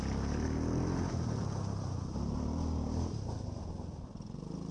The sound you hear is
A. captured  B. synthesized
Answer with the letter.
A